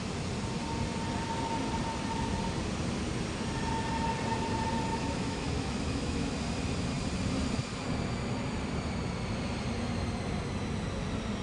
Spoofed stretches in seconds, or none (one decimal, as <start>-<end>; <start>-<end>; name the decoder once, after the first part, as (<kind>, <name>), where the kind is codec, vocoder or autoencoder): 4.9-6.3 (autoencoder, DAC-VAE)